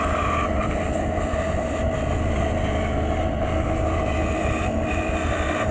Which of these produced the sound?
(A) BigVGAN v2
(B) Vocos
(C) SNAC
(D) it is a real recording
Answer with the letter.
D